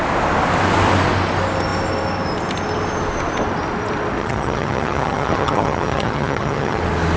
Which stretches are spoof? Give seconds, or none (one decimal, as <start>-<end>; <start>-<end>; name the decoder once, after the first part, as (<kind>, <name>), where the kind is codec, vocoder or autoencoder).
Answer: 4.2-6.8 (vocoder, HiFi-GAN)